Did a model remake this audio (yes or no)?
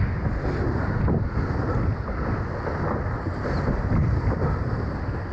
no